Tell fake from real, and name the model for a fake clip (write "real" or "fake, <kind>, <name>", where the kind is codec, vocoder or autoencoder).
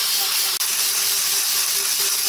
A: real